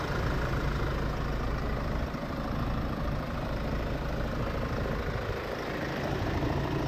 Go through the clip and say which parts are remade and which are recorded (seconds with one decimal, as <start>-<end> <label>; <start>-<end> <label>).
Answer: 0.0-0.9 remade; 0.9-1.7 recorded; 1.7-6.9 remade